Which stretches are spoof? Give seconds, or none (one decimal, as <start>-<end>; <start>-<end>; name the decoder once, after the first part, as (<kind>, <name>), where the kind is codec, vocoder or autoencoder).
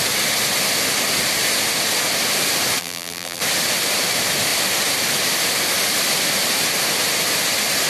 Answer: 2.8-3.4 (vocoder, BigVGAN v2)